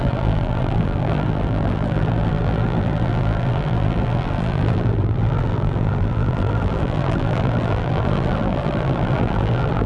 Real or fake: fake